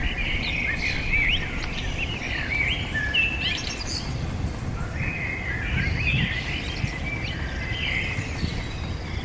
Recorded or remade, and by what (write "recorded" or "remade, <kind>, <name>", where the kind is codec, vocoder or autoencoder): recorded